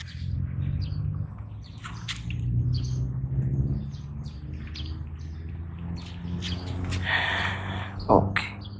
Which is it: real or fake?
real